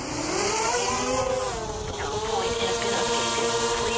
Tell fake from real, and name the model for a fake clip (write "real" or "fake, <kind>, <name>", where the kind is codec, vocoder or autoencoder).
fake, vocoder, BigVGAN v2